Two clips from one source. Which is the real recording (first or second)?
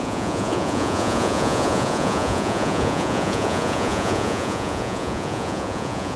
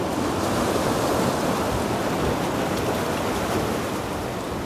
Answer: second